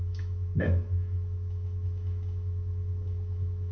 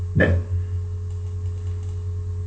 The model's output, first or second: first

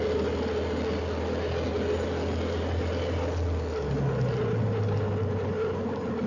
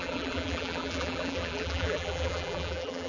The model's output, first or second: second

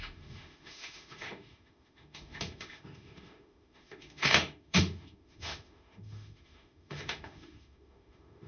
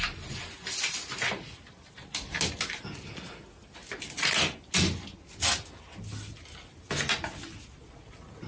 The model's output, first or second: first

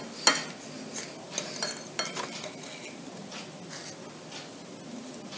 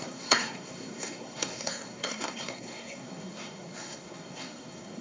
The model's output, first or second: second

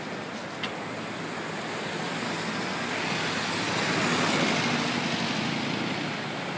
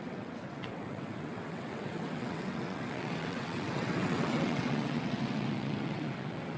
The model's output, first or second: second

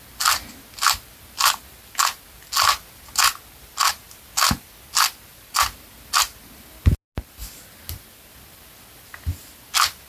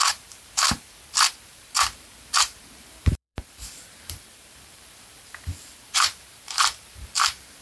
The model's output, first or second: second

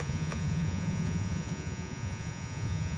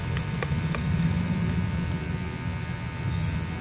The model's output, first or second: first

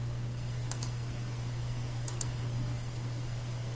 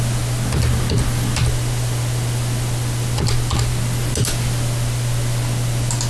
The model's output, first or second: first